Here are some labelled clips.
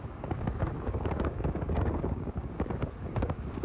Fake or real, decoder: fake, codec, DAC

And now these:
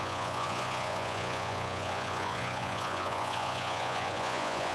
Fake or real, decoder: fake, vocoder, Vocos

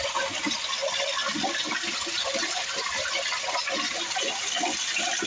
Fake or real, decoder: real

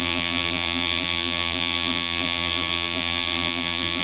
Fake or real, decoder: fake, vocoder, BigVGAN v2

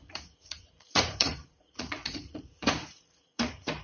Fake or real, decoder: fake, vocoder, Vocos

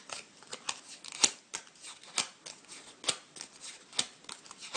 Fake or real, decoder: real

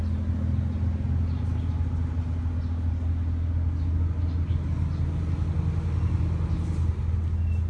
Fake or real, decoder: real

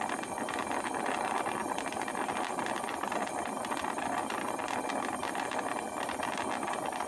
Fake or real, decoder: real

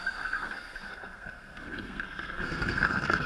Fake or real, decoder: fake, codec, SNAC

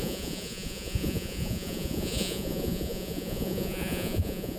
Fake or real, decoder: fake, vocoder, Vocos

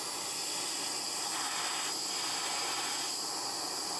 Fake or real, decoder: real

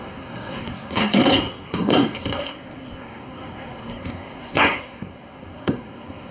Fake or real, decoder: fake, codec, SNAC